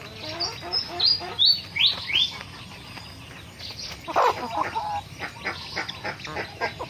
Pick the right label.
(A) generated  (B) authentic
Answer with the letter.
B